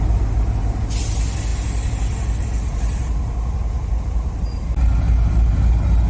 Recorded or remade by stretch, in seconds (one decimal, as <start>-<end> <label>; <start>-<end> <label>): 0.0-6.1 recorded